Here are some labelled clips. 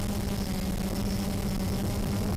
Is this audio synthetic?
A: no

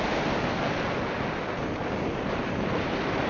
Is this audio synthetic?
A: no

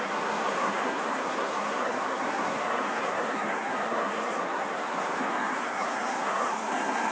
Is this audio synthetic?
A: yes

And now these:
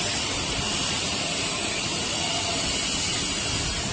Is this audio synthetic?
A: yes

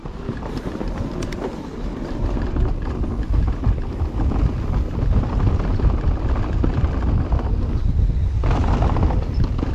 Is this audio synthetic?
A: no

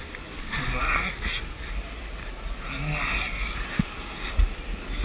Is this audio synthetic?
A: no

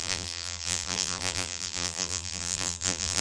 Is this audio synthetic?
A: yes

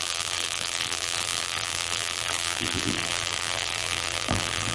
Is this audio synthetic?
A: yes